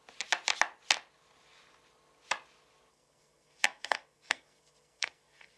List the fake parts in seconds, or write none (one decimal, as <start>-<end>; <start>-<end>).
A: 2.9-5.6